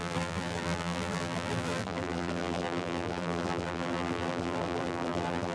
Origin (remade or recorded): remade